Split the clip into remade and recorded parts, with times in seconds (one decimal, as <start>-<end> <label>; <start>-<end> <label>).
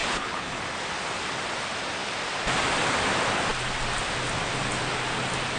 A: 0.0-0.6 remade; 0.6-5.6 recorded